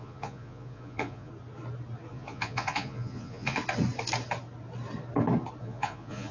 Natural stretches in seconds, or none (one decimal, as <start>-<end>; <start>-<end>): 1.3-2.1; 3.6-5.6